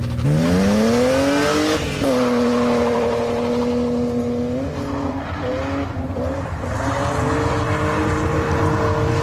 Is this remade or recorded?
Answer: recorded